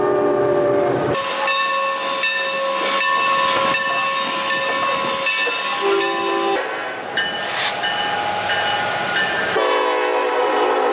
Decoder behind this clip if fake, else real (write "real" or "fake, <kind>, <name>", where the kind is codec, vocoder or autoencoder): real